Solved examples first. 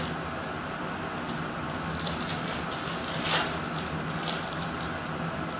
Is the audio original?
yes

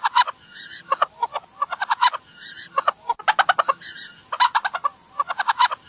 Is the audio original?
yes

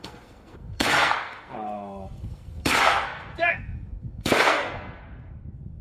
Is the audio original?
no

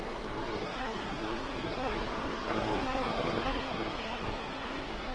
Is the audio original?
no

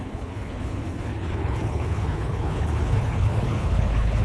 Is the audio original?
no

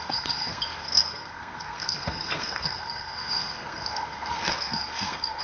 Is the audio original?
no